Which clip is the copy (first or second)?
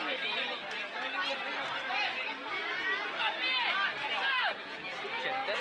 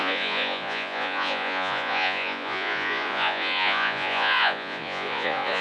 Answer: second